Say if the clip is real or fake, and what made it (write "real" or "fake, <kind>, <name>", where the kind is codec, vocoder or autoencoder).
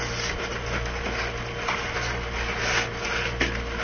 real